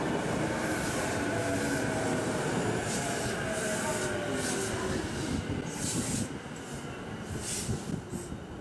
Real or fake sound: real